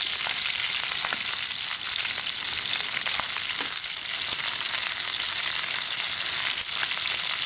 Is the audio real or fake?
real